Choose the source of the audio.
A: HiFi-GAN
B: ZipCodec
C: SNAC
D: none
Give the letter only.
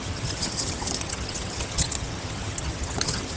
A